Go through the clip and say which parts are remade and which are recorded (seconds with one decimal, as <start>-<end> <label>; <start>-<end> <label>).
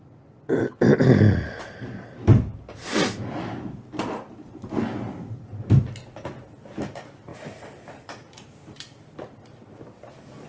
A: 0.0-0.9 recorded; 0.9-3.0 remade; 3.0-7.3 recorded; 7.3-10.0 remade; 10.0-10.5 recorded